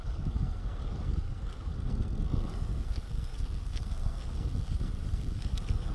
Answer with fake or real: fake